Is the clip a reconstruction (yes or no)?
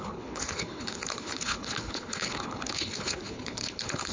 yes